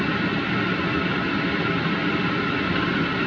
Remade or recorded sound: recorded